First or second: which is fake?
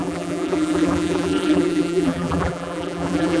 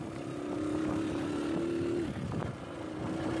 first